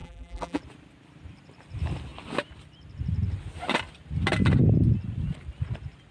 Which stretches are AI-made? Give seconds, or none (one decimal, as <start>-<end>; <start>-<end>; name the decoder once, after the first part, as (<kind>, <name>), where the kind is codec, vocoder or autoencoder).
0.0-0.6 (vocoder, BigVGAN v2)